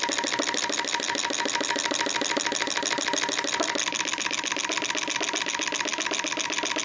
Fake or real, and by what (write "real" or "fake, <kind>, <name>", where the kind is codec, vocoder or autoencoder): real